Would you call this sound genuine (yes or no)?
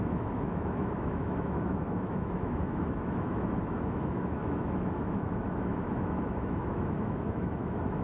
no